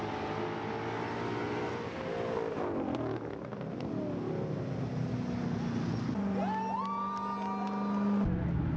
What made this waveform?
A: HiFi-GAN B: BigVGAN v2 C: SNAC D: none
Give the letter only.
D